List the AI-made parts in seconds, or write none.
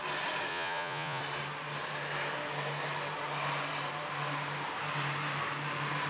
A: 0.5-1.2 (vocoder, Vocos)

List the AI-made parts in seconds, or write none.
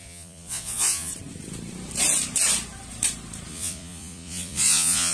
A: 0.0-1.1 (vocoder, Vocos); 3.5-5.1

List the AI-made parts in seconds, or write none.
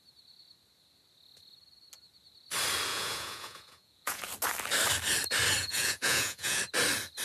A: 2.9-4.2 (vocoder, Vocos); 5.6-6.6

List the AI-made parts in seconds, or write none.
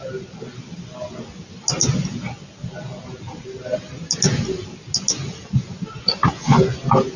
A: none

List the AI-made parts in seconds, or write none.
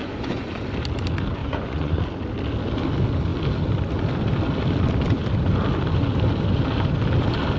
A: 0.0-0.6 (vocoder, Vocos); 1.4-2.0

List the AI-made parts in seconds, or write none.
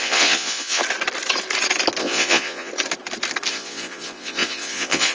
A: 0.0-0.8 (vocoder, Vocos); 2.0-2.7; 3.5-5.1